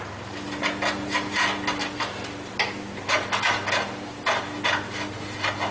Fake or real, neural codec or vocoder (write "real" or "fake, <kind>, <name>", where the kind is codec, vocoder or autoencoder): real